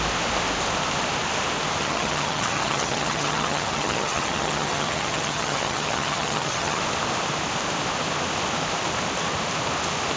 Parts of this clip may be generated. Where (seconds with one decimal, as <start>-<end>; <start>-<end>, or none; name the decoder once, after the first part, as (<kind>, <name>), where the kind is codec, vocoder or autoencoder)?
1.8-6.8 (vocoder, HiFi-GAN)